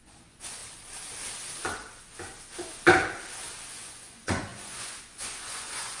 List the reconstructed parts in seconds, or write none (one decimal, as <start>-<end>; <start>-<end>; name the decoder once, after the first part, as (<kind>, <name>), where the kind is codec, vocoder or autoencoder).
0.0-0.6 (vocoder, Vocos); 3.7-6.0